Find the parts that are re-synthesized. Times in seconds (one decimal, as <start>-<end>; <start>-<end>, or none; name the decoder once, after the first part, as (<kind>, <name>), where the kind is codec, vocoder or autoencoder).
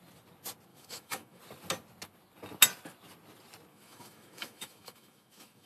0.7-1.4 (autoencoder, DAC-VAE); 3.7-5.7